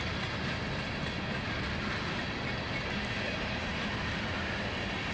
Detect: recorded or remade recorded